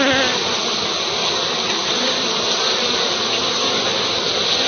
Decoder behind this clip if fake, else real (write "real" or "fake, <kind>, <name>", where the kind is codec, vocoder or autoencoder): real